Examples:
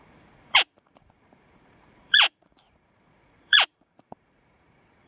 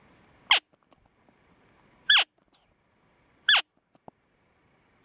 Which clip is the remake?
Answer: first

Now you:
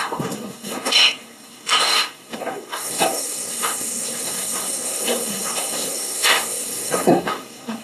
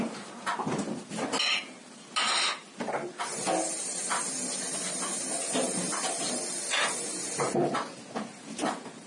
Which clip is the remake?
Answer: first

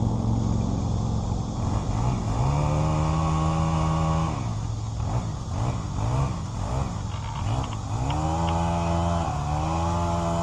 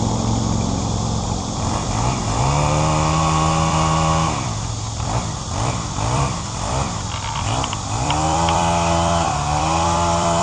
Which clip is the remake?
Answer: second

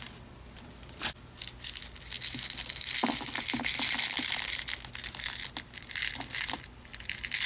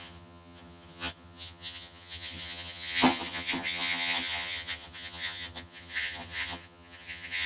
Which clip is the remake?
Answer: second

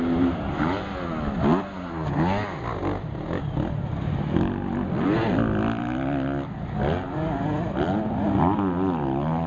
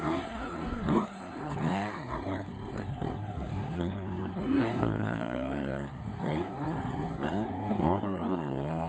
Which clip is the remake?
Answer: second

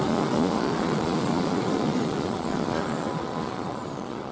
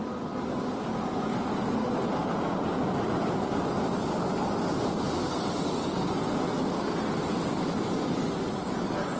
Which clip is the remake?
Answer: first